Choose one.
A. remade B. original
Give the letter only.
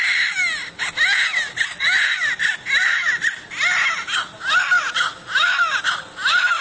B